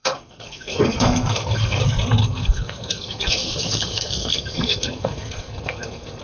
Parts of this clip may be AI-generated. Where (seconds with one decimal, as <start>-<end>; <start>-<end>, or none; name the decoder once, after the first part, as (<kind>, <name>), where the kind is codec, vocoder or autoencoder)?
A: 0.0-1.8 (codec, SNAC); 2.2-6.2